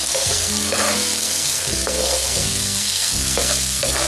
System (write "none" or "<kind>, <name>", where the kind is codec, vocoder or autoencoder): codec, SNAC